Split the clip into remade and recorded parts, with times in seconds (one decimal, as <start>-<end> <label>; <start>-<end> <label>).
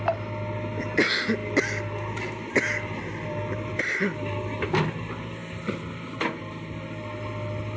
0.0-7.8 recorded